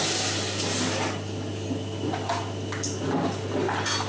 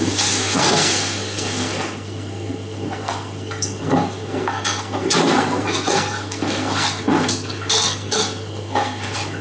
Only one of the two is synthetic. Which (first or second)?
second